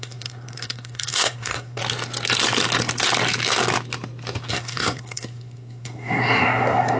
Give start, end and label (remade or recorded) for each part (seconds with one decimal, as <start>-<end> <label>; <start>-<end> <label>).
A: 0.0-1.8 remade; 1.8-4.5 recorded; 4.5-7.0 remade